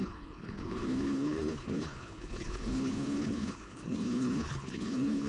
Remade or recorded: remade